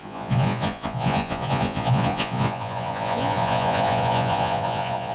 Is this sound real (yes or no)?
no